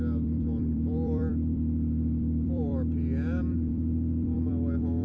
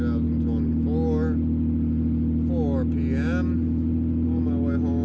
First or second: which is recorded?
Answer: second